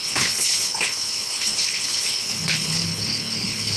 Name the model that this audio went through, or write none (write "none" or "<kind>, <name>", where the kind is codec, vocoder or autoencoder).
codec, HILCodec